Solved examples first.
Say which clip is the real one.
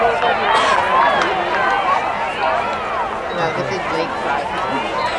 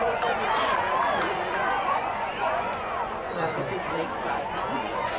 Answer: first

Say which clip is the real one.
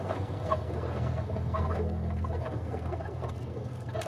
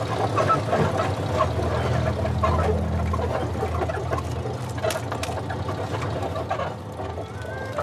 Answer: second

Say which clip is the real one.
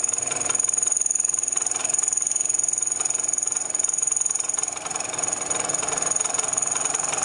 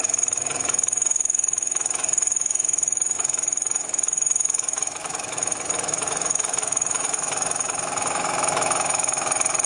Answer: first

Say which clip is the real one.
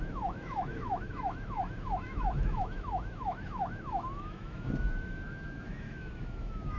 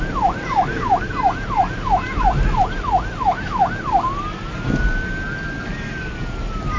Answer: second